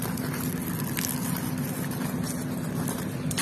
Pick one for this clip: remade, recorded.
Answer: recorded